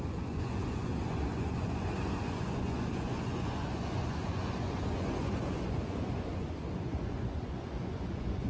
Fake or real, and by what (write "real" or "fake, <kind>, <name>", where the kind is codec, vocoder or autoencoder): fake, vocoder, Vocos